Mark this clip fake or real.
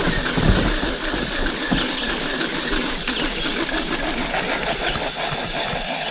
real